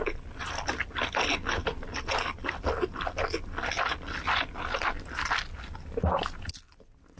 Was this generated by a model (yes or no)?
no